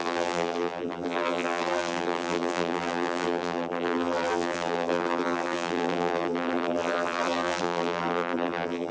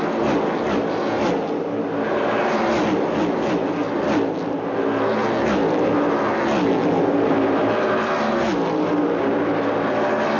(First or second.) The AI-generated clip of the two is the first